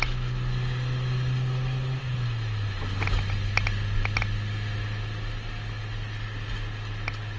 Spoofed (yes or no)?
no